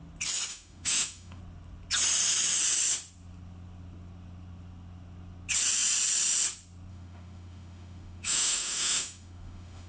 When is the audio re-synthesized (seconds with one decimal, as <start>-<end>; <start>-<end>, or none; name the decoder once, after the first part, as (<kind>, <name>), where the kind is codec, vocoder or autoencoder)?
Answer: 0.5-1.4 (autoencoder, DAC-VAE); 6.9-9.9